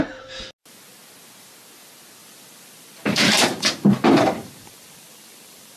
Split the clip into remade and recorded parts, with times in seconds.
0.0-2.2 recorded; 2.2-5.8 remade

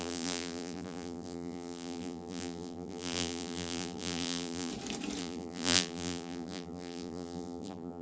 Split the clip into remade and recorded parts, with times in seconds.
0.0-4.7 remade; 4.7-5.2 recorded; 5.2-8.0 remade

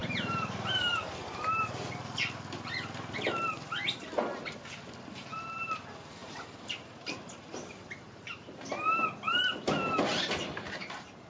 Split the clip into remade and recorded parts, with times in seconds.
0.0-1.6 remade; 1.6-6.2 recorded; 6.2-8.8 remade; 8.8-10.1 recorded; 10.1-11.3 remade

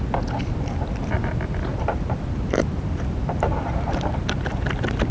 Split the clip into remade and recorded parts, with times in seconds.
0.0-1.7 recorded; 1.7-4.1 remade; 4.1-5.1 recorded

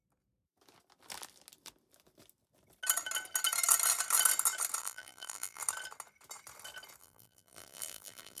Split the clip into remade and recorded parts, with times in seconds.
0.0-4.8 recorded; 4.8-5.6 remade; 5.6-7.0 recorded; 7.0-8.4 remade

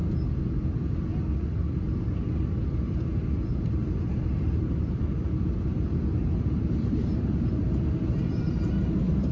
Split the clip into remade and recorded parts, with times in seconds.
0.0-3.5 recorded; 3.5-8.5 remade; 8.5-9.3 recorded